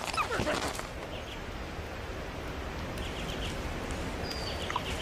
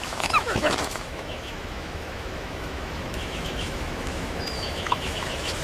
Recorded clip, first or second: first